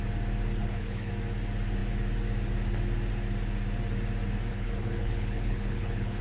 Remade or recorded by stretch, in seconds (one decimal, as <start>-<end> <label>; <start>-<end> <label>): 0.0-0.6 recorded; 0.6-1.1 remade; 1.1-4.5 recorded; 4.5-6.2 remade